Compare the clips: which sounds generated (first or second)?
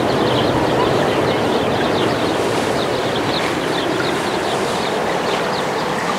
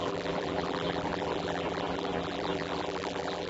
second